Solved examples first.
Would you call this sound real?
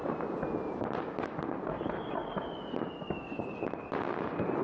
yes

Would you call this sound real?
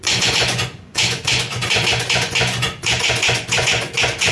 no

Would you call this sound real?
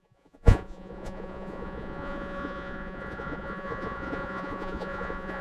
no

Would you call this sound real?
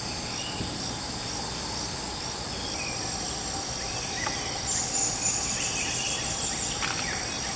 yes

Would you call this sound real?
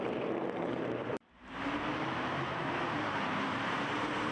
no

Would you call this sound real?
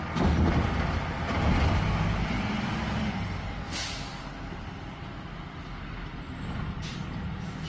yes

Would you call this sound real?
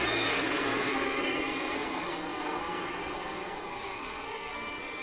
no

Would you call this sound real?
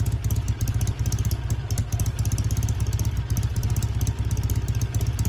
yes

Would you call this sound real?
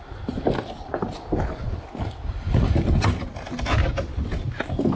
yes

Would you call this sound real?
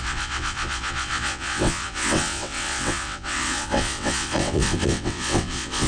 no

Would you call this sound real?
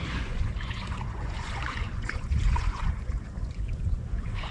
no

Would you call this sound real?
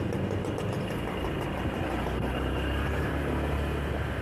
yes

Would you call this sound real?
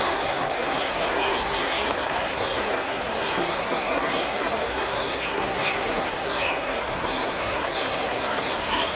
no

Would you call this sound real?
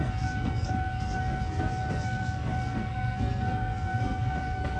no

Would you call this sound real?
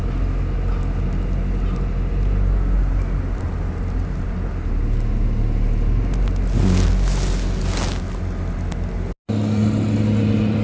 yes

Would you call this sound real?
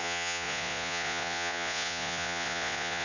no